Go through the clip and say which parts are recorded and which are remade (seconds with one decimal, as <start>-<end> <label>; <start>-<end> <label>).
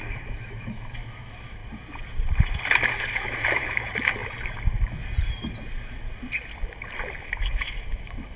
0.0-1.6 remade; 1.6-2.9 recorded; 2.9-4.2 remade; 4.2-7.2 recorded; 7.2-8.4 remade